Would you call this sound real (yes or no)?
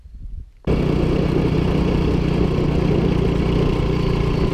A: yes